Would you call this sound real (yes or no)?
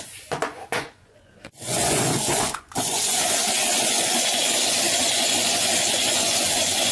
no